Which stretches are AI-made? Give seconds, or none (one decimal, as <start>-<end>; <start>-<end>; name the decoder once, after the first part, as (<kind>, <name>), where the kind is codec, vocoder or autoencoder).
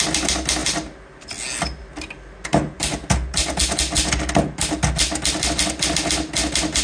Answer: none